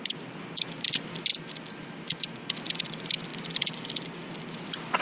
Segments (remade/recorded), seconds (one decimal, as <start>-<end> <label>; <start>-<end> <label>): 0.0-5.0 recorded